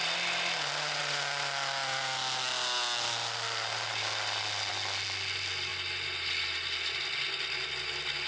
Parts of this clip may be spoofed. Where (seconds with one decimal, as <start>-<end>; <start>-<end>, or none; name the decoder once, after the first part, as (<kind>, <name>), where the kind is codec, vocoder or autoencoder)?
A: none